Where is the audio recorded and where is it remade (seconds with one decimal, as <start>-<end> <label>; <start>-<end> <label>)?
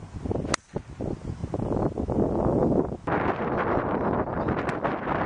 0.0-5.3 recorded